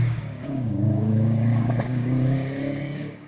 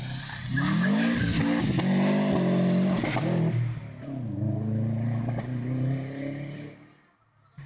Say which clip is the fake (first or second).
first